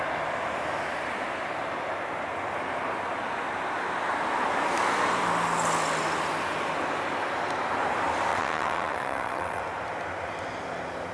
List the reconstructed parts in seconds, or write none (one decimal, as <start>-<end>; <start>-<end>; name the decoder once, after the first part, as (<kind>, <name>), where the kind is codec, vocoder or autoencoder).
8.3-9.6 (vocoder, WaveNeXt)